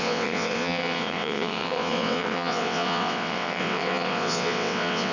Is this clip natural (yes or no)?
no